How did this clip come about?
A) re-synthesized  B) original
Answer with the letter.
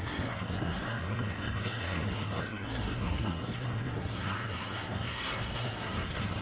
A